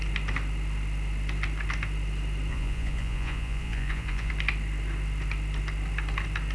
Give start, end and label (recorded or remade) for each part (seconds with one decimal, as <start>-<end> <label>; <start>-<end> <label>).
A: 0.0-2.5 recorded; 2.5-4.3 remade; 4.3-6.5 recorded